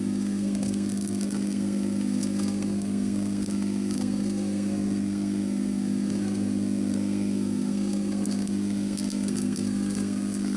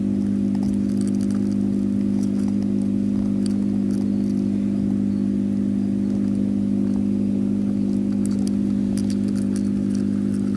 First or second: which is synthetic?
first